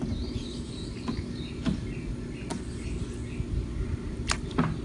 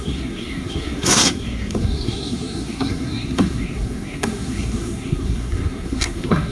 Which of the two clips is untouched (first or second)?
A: first